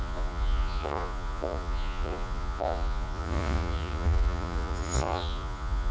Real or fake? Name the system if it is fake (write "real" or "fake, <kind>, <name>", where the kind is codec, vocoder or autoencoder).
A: fake, vocoder, Vocos